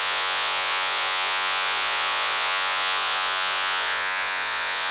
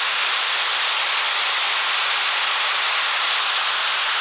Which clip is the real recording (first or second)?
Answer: second